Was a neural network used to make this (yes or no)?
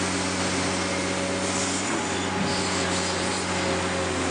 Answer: no